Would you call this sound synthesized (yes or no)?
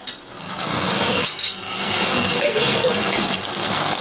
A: yes